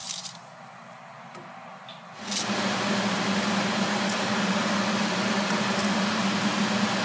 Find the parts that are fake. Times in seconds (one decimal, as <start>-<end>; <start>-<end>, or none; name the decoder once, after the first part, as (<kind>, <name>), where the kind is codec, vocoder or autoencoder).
none